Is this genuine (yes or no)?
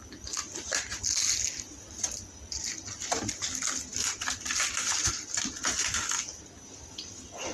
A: yes